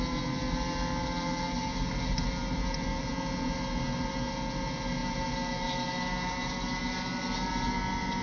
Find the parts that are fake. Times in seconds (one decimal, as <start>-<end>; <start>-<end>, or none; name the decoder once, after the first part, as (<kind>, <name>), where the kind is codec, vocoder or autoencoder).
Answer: none